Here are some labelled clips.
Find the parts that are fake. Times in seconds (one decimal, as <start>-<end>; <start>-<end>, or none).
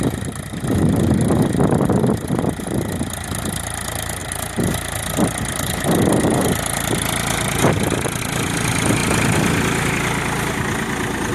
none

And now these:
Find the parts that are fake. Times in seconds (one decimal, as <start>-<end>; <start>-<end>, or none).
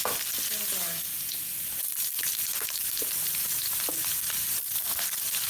none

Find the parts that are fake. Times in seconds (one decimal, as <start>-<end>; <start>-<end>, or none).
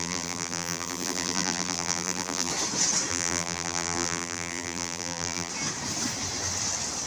0.0-2.5; 3.1-5.5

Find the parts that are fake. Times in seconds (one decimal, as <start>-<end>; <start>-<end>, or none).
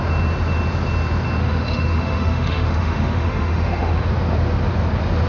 1.4-4.1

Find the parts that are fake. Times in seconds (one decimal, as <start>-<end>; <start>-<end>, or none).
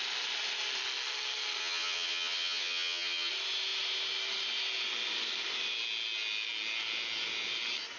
1.6-3.3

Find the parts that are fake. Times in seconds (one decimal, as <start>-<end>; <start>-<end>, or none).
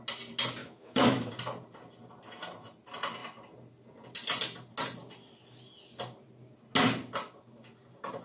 0.6-1.3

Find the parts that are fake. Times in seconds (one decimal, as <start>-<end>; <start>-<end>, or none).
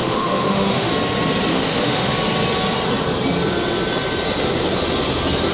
0.0-0.9; 1.5-2.1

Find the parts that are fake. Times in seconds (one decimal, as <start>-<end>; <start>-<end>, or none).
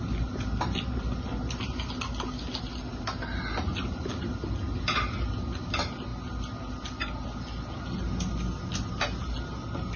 none